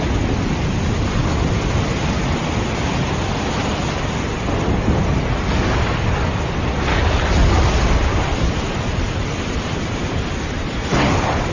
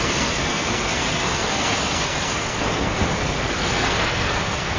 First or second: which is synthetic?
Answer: second